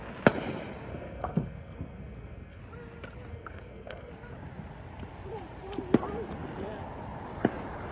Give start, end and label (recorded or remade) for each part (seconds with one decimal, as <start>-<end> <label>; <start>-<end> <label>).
0.0-0.9 recorded; 0.9-2.6 remade; 2.6-3.3 recorded; 3.3-4.1 remade; 4.1-7.9 recorded